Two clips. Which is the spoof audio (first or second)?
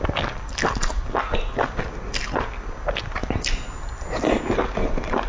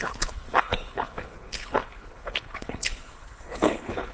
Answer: second